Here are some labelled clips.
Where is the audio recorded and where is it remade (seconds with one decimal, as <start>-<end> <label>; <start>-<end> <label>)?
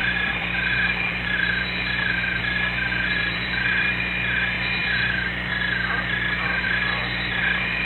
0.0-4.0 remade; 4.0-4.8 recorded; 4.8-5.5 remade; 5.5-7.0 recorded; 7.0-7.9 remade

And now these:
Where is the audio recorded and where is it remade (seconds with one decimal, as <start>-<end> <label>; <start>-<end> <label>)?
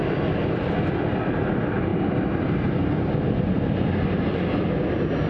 0.0-5.3 recorded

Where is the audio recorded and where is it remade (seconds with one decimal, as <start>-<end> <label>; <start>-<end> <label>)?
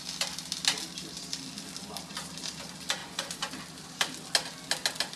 0.0-3.0 recorded; 3.0-3.5 remade; 3.5-5.2 recorded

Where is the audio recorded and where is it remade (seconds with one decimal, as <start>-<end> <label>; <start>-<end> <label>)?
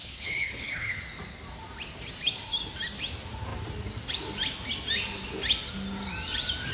0.0-1.0 remade; 1.0-6.7 recorded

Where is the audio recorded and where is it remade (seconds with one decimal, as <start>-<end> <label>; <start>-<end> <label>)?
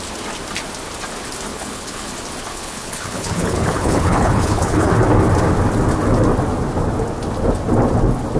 0.0-1.5 recorded; 1.5-2.1 remade; 2.1-2.5 recorded; 2.5-4.9 remade; 4.9-8.4 recorded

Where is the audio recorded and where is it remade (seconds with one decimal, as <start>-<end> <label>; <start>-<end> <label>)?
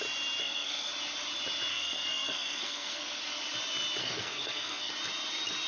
0.0-0.4 recorded; 0.4-0.9 remade; 0.9-1.7 recorded; 1.7-3.2 remade; 3.2-4.0 recorded; 4.0-4.9 remade; 4.9-5.7 recorded